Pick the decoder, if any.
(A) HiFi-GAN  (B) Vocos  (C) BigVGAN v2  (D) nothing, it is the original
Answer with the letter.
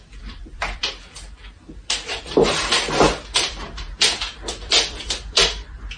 C